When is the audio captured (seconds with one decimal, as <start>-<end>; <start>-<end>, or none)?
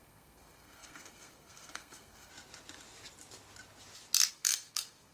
2.3-4.3